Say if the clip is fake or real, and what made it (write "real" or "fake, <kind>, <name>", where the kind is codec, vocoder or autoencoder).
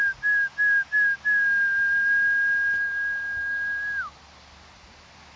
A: real